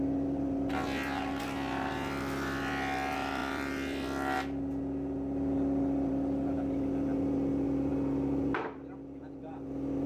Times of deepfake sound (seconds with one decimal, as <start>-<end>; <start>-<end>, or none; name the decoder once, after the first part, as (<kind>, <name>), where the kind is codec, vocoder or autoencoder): none